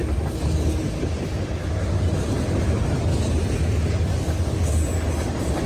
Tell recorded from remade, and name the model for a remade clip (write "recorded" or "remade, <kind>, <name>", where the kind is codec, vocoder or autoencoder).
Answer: recorded